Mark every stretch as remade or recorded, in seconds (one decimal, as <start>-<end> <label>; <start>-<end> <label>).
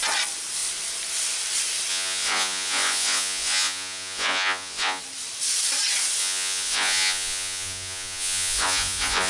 0.0-1.9 recorded; 1.9-5.0 remade; 5.0-6.2 recorded; 6.2-9.3 remade